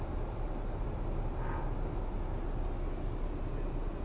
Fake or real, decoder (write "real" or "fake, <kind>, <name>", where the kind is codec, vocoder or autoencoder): real